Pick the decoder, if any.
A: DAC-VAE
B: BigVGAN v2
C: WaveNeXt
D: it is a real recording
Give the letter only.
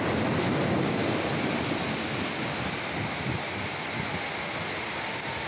D